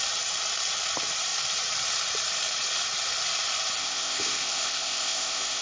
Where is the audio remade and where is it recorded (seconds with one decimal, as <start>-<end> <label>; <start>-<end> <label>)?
0.0-3.8 recorded; 3.8-5.6 remade

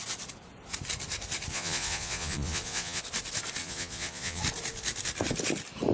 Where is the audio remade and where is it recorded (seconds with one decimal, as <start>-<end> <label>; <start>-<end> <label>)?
0.0-1.5 recorded; 1.5-3.0 remade; 3.0-3.6 recorded; 3.6-4.4 remade; 4.4-5.9 recorded

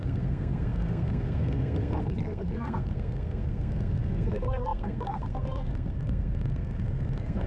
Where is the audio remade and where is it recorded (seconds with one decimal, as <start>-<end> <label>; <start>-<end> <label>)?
0.0-7.5 remade

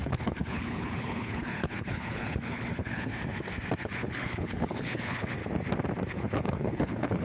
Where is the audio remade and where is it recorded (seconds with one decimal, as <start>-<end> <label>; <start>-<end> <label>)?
0.0-3.1 remade; 3.1-3.8 recorded; 3.8-5.4 remade; 5.4-6.1 recorded; 6.1-7.2 remade